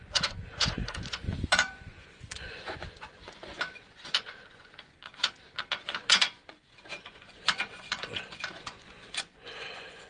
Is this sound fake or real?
fake